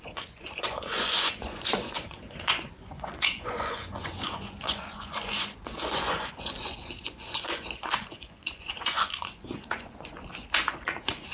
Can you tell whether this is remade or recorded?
remade